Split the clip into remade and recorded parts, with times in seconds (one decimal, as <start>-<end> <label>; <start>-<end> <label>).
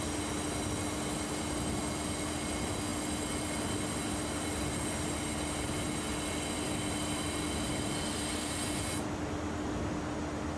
0.0-10.6 recorded